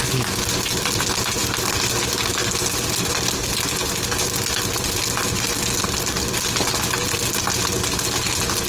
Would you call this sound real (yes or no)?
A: yes